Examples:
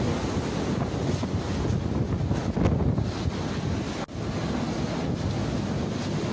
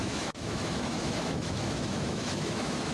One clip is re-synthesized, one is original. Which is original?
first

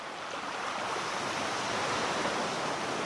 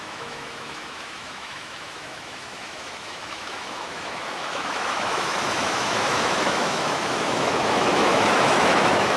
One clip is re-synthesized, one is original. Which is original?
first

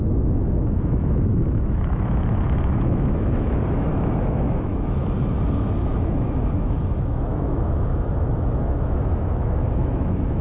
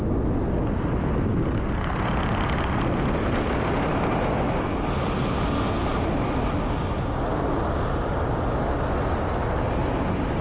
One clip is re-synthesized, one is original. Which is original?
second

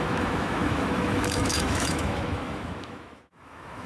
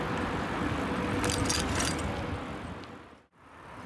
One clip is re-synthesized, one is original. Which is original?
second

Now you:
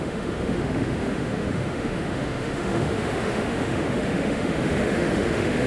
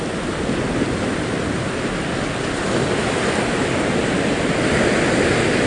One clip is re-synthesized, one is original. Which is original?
second